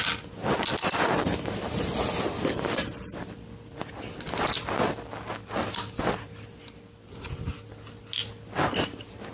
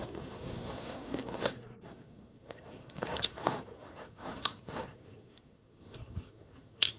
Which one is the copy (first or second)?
second